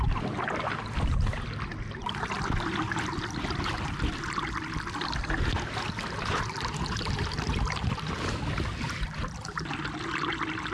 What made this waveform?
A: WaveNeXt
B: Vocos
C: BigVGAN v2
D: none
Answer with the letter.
D